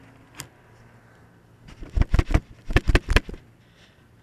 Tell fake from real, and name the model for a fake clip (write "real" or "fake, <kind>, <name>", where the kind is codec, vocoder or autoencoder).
real